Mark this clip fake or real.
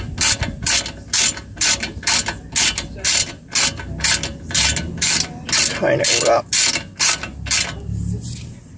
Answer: real